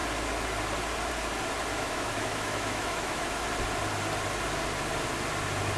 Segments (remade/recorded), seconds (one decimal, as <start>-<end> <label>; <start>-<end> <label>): 0.0-1.7 recorded; 1.7-3.4 remade; 3.4-5.8 recorded